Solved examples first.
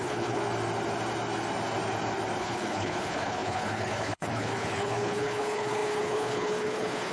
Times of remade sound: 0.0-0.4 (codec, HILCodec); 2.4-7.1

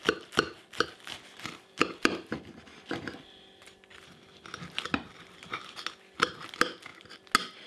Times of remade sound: none

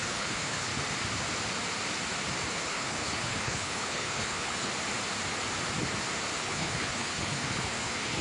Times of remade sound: 0.0-0.7 (codec, HILCodec); 2.5-4.7; 6.4-8.2